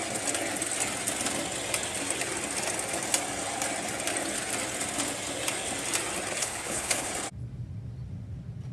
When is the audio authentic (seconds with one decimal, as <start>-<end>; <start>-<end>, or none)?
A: 0.0-6.4; 7.1-8.7